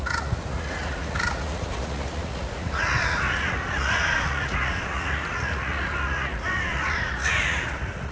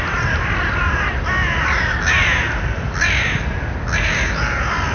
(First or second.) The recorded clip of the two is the second